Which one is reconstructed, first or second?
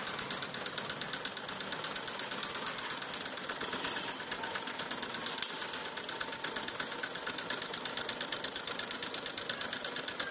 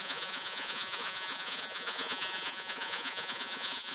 second